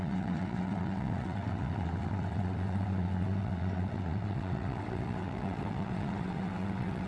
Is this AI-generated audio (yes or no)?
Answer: yes